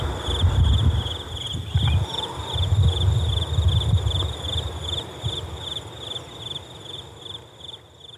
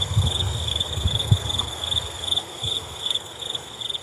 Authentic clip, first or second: first